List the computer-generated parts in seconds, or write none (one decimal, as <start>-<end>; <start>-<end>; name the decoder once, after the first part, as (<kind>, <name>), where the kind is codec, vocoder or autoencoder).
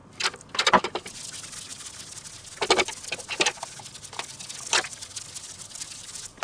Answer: 3.8-6.4 (vocoder, BigVGAN v2)